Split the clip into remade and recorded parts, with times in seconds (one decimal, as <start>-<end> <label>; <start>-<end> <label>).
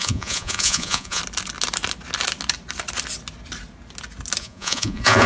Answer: 0.0-1.2 remade; 1.2-4.4 recorded; 4.4-5.3 remade